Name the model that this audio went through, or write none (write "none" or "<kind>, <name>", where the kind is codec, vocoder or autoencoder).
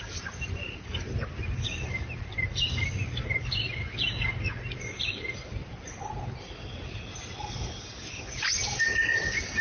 none